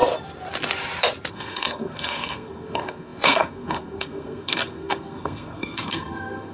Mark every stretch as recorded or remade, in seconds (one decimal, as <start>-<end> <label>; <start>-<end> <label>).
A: 0.0-1.3 recorded; 1.3-6.5 remade